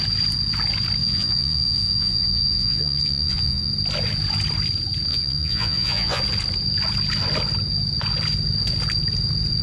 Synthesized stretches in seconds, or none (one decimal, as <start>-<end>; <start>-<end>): 1.0-3.7; 5.1-6.2